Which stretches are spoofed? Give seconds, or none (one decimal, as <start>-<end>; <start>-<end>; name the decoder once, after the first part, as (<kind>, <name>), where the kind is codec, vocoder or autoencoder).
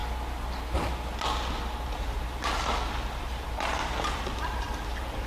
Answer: 3.2-5.3 (vocoder, BigVGAN v2)